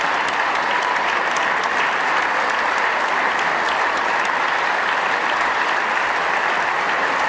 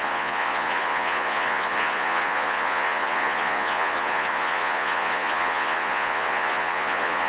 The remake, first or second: second